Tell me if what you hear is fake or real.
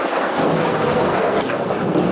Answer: fake